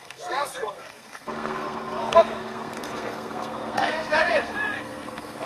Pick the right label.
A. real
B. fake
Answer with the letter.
B